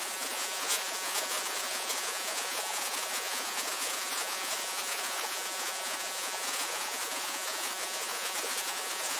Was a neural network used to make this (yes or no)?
yes